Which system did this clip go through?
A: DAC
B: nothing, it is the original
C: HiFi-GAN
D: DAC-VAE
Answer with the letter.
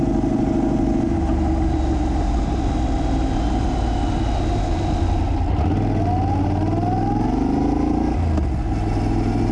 B